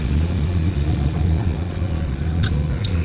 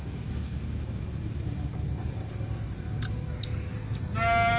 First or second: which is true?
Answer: second